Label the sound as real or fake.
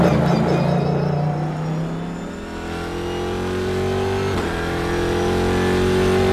real